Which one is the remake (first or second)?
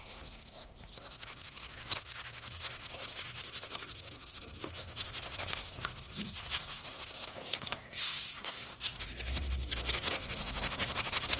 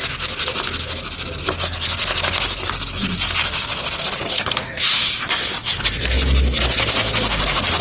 first